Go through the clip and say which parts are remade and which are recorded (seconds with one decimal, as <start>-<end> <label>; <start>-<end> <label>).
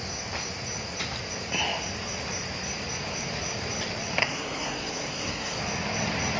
0.0-4.2 recorded; 4.2-5.6 remade; 5.6-6.4 recorded